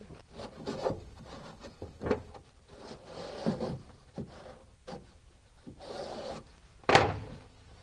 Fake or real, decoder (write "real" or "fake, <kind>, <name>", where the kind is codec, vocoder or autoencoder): fake, vocoder, BigVGAN v2